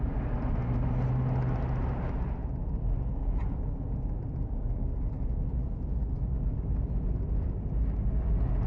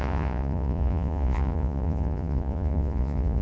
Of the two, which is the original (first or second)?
first